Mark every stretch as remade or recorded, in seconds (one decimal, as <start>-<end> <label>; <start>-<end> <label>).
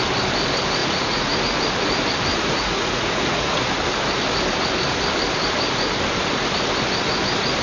0.0-0.8 recorded; 0.8-1.4 remade; 1.4-2.3 recorded; 2.3-3.6 remade; 3.6-7.6 recorded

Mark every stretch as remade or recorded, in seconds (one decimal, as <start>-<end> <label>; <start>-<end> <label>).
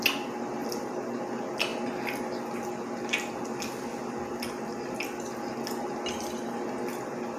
0.0-7.4 recorded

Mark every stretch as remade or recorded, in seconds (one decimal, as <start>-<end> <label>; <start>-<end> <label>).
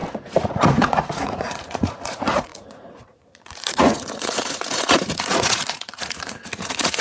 0.0-7.0 remade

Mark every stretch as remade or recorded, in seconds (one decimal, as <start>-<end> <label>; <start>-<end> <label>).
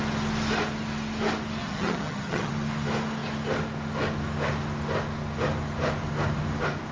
0.0-1.6 recorded; 1.6-2.5 remade; 2.5-6.9 recorded